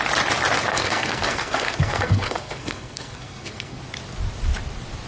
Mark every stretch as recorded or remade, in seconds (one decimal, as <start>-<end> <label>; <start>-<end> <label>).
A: 0.0-0.7 recorded; 0.7-3.8 remade; 3.8-5.1 recorded